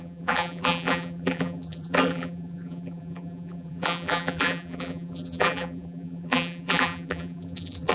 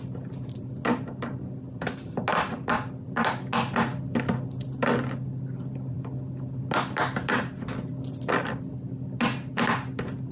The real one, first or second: second